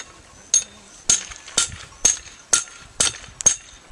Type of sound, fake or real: real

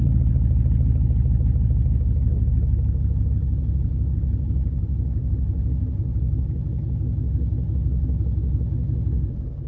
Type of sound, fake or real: real